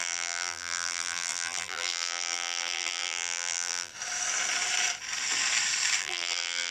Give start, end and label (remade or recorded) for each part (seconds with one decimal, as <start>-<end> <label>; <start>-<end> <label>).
0.0-3.9 remade; 3.9-6.0 recorded; 6.0-6.7 remade